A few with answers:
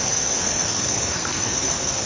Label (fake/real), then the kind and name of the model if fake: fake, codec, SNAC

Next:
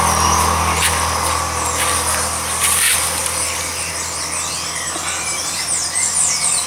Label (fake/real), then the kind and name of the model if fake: real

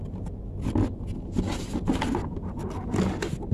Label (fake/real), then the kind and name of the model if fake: real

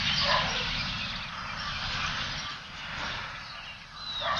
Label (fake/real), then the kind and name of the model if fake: real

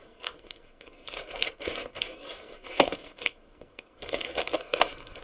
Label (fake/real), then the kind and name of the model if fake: fake, codec, SNAC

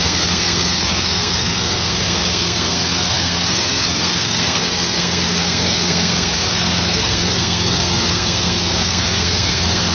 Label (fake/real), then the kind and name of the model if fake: fake, codec, SNAC